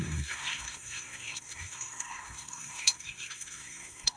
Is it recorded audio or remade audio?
remade